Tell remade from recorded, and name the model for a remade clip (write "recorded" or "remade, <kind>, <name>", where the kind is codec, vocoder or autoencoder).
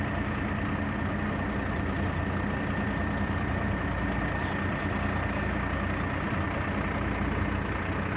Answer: recorded